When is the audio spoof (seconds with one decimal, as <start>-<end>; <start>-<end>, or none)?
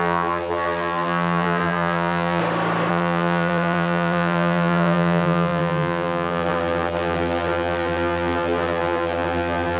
0.0-2.4; 2.9-9.8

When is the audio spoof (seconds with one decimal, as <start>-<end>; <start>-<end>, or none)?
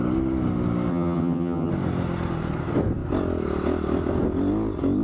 0.9-1.7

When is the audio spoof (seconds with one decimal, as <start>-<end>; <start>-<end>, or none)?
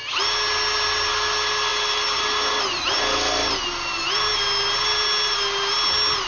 none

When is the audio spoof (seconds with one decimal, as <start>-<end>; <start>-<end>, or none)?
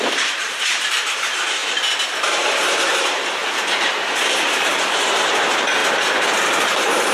0.0-1.6; 2.2-7.1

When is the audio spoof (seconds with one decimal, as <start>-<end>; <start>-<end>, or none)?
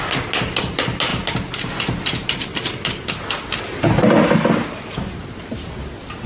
none